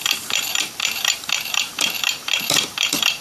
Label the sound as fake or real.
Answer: fake